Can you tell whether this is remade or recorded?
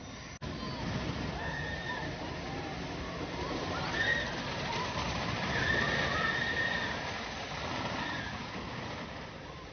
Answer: recorded